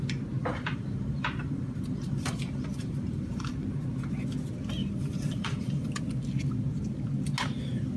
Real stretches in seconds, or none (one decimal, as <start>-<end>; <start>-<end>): 0.0-0.4; 3.5-4.8; 6.0-8.0